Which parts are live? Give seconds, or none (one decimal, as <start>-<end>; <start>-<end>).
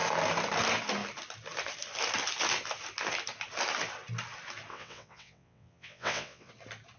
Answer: 0.0-4.7; 6.5-7.0